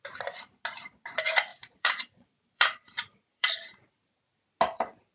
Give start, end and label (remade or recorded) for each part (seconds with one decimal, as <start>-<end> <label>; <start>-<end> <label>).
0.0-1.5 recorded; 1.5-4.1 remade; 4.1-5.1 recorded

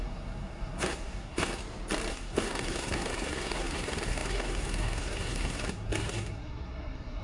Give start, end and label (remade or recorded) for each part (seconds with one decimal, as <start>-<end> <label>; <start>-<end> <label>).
0.0-1.6 remade; 1.6-2.1 recorded; 2.1-7.2 remade

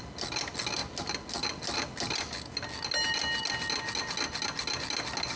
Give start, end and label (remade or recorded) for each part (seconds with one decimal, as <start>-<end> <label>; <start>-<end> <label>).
0.0-5.4 recorded

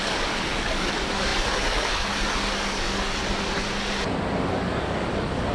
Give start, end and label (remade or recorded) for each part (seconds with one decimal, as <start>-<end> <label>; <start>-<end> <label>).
0.0-3.2 remade; 3.2-4.3 recorded; 4.3-5.5 remade